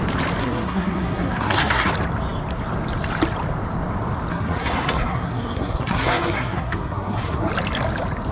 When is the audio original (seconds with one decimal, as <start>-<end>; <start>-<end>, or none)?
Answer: 0.0-0.4; 1.9-4.3; 7.5-8.3